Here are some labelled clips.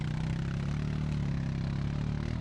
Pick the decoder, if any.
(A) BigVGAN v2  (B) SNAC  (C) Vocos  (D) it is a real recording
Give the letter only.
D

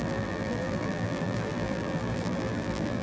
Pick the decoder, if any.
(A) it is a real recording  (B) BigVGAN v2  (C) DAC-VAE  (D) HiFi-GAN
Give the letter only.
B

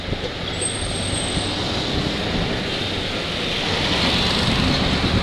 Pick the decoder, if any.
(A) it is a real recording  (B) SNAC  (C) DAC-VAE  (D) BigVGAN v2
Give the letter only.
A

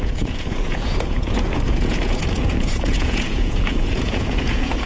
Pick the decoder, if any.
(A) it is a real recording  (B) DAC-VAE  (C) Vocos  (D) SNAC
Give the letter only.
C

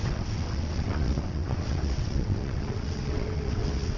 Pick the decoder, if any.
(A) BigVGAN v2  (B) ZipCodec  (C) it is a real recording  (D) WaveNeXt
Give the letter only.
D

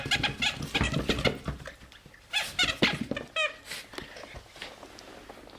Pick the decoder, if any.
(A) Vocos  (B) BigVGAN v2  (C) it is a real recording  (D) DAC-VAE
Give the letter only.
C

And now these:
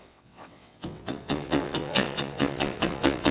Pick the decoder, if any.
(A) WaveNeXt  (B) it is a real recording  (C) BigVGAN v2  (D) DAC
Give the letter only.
A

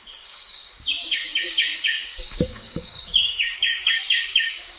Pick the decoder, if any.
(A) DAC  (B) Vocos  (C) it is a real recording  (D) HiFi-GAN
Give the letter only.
A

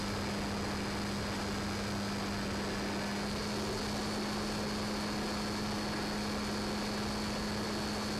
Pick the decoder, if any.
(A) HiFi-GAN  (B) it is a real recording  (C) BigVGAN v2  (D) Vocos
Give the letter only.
B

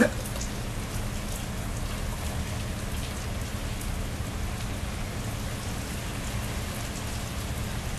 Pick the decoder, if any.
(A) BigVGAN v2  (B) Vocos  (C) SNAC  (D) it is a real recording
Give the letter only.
D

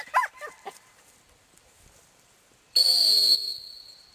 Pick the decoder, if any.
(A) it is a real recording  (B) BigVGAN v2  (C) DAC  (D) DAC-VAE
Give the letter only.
B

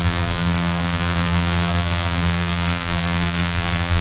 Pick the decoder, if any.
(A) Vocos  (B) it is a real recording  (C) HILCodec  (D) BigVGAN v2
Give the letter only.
D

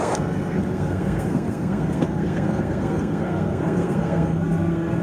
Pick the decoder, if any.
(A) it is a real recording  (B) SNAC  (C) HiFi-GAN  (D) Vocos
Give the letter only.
B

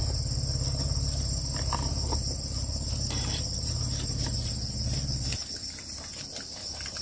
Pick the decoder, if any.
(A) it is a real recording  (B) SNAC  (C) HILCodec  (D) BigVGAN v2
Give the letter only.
A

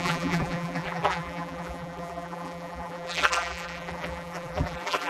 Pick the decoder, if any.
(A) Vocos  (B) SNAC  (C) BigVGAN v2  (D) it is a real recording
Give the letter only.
C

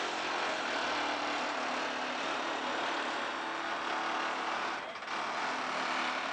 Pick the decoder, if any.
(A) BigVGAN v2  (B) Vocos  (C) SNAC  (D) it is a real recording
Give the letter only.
D